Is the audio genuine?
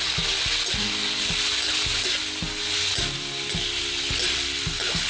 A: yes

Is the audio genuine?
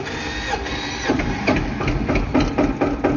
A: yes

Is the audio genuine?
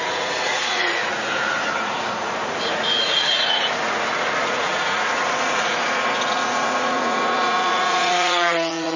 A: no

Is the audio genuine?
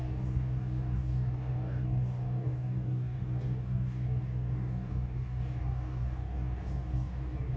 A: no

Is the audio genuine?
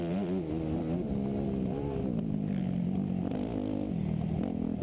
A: yes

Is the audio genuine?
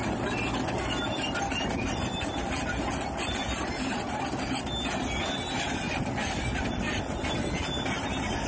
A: yes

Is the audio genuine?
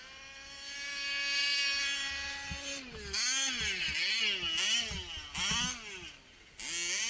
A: yes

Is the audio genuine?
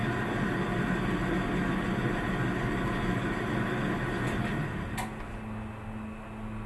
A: yes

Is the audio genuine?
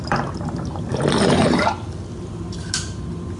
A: yes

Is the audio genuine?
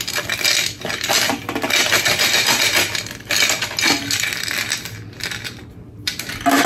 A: yes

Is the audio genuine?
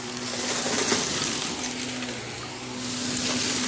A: yes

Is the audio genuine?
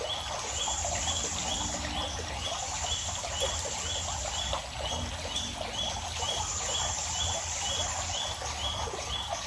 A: yes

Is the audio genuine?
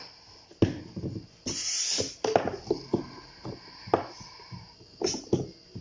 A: yes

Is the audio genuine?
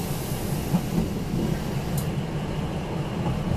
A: yes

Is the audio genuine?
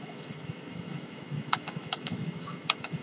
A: no